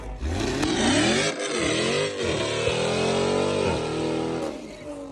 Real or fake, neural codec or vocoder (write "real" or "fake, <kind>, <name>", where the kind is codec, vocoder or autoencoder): real